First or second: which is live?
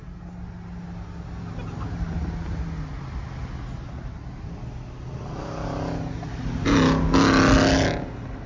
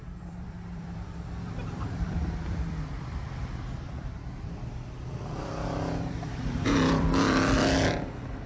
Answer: first